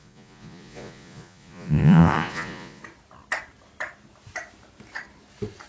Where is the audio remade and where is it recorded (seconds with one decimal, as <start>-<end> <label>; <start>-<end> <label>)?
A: 0.0-2.8 remade; 2.8-5.7 recorded